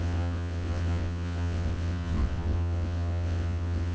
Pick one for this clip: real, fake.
fake